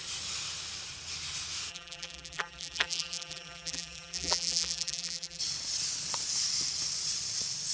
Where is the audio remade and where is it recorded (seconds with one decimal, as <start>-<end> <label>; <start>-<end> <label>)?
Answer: 0.0-1.7 recorded; 1.7-5.4 remade; 5.4-7.7 recorded